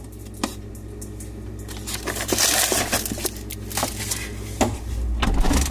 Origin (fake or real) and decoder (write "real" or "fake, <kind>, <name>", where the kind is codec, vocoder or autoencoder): real